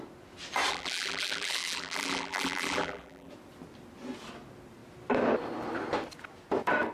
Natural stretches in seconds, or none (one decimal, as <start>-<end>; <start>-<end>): 0.0-0.7; 3.3-6.9